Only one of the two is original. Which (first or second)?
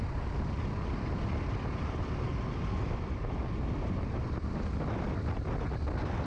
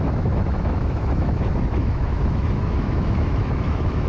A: first